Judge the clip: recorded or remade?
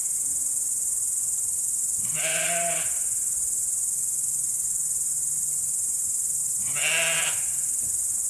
recorded